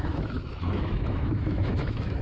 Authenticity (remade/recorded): remade